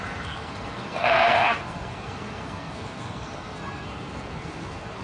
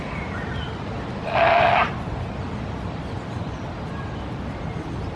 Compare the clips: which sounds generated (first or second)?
first